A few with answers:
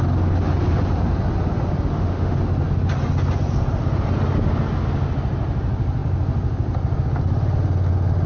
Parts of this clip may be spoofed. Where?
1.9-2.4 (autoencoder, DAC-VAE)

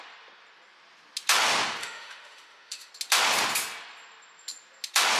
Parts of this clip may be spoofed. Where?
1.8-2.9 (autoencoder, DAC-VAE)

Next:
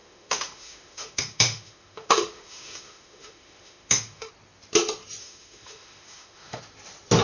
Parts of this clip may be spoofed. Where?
0.0-4.3 (autoencoder, DAC-VAE); 5.2-6.6

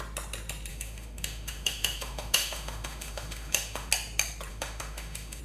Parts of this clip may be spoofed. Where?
0.7-3.9 (autoencoder, DAC-VAE); 4.5-5.4

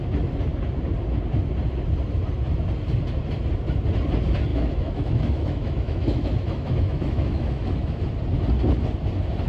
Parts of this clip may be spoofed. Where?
4.5-8.0 (autoencoder, DAC-VAE)

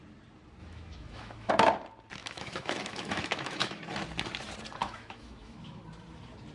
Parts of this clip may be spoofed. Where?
0.6-1.5 (autoencoder, DAC-VAE); 2.2-3.8; 4.8-5.8